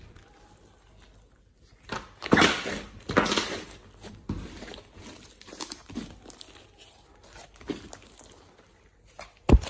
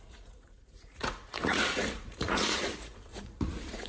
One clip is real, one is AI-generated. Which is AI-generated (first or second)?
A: second